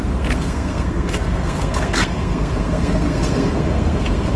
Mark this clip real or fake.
fake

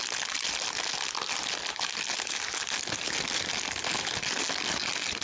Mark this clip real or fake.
real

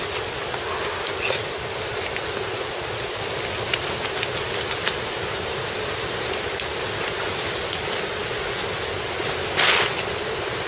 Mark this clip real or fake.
real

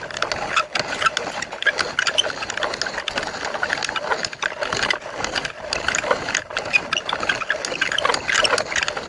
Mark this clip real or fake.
real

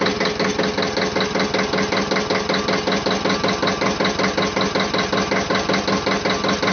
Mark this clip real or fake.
real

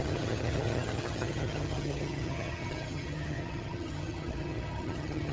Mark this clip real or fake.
fake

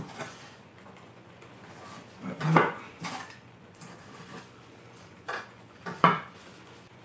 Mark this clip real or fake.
fake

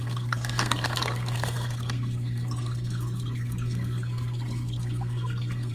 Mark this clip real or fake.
fake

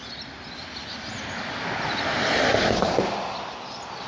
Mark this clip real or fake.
real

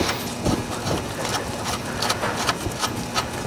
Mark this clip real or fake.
real